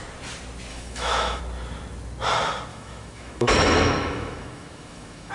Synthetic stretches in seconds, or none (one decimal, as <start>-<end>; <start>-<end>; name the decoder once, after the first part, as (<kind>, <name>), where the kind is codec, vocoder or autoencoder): 0.7-1.4 (autoencoder, DAC-VAE); 2.7-5.3